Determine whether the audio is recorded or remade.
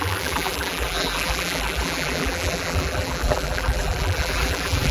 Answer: remade